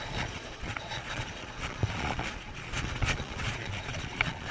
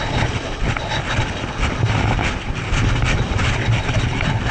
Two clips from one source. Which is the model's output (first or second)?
first